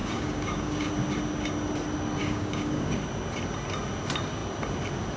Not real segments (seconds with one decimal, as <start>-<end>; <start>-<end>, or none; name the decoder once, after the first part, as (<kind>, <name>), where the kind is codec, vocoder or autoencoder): 0.0-0.9 (codec, DAC); 2.2-3.0